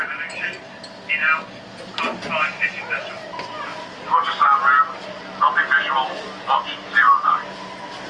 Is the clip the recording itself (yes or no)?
yes